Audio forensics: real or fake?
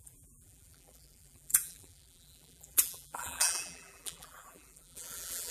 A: fake